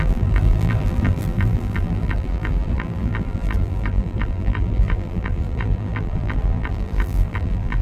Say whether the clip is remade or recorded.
remade